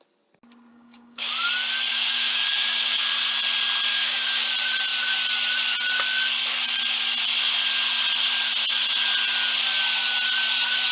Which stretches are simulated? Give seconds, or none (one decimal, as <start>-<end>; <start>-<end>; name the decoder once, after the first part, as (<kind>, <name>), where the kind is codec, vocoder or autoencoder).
0.7-1.3 (codec, DAC); 1.9-3.0; 3.9-4.5